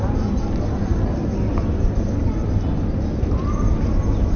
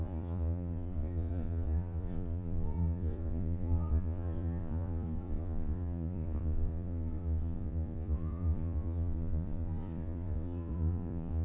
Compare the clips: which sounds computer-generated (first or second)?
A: second